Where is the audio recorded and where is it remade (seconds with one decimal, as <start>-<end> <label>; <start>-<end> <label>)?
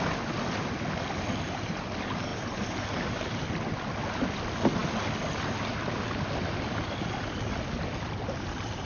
0.0-8.9 recorded